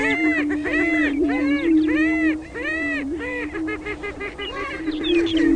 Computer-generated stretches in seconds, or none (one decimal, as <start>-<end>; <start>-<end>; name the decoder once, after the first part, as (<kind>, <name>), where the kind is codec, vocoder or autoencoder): 2.4-4.7 (vocoder, BigVGAN v2)